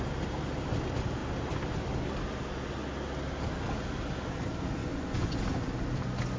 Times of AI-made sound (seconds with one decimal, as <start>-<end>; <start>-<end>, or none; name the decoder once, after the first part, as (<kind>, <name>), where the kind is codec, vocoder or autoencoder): 4.8-5.4 (vocoder, Vocos)